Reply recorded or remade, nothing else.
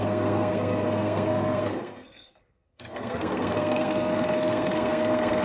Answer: remade